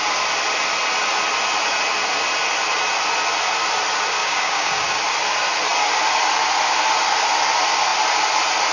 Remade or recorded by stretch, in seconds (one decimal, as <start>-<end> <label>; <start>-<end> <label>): 0.0-4.2 recorded; 4.2-5.0 remade; 5.0-8.7 recorded